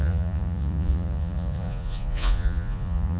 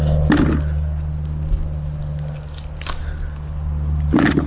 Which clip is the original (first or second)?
second